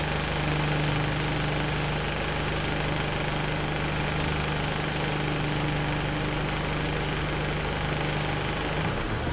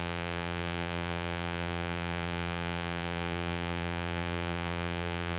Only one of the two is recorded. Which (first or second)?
first